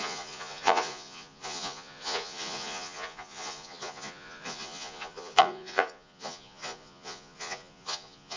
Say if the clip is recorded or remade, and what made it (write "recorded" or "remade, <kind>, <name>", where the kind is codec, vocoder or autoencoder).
remade, vocoder, Vocos